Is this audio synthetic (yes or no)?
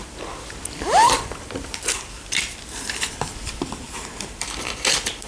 yes